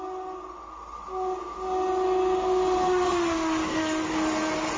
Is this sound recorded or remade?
recorded